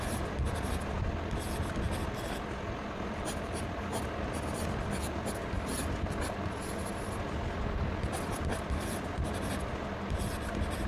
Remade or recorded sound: recorded